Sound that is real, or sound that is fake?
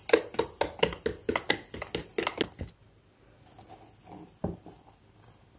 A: real